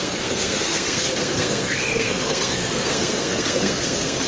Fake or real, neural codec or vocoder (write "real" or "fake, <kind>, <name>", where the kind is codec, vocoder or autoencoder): fake, codec, SNAC